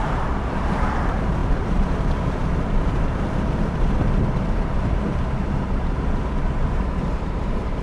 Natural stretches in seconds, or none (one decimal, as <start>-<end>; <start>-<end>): none